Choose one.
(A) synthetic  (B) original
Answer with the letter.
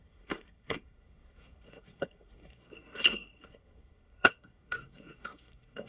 A